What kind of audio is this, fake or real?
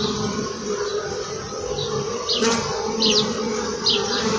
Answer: real